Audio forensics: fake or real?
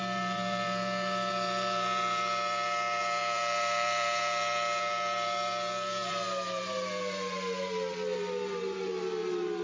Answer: fake